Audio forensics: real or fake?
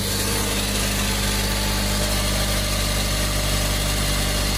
real